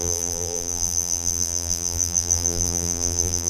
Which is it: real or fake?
fake